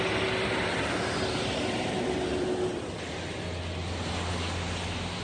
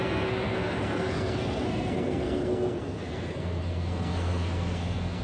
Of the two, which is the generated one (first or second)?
second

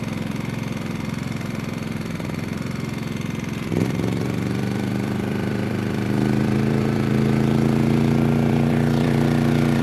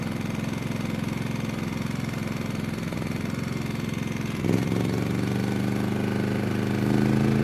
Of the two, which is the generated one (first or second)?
first